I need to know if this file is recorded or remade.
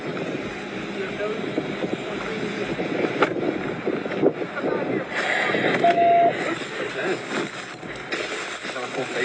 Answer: recorded